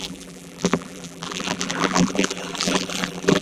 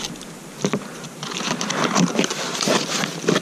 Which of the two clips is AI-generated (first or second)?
first